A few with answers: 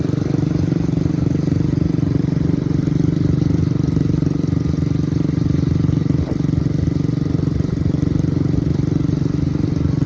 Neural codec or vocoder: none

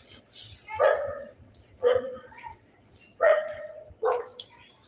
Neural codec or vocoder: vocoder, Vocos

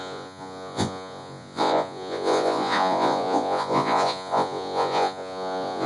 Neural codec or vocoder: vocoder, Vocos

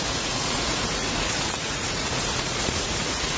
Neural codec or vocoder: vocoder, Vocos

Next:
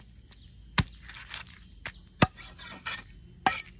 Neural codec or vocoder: none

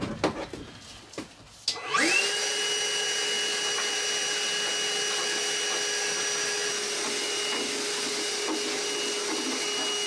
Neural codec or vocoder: none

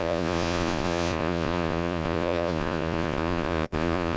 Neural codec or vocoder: vocoder, Vocos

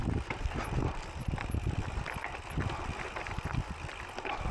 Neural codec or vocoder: none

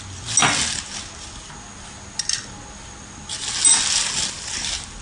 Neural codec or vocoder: none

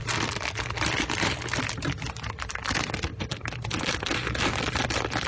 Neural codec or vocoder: none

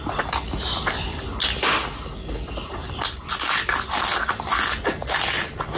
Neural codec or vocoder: none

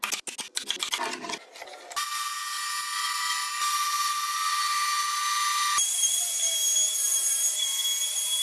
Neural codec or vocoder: none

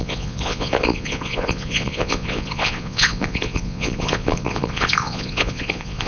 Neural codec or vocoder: vocoder, Vocos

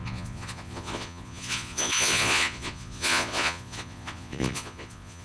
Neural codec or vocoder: vocoder, Vocos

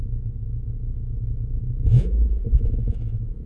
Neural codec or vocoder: vocoder, Vocos